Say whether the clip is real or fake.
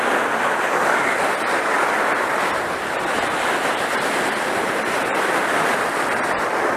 real